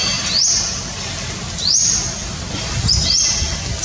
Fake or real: real